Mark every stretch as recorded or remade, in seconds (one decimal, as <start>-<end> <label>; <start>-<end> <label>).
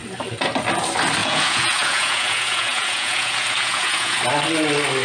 0.0-1.2 recorded; 1.2-4.2 remade; 4.2-5.0 recorded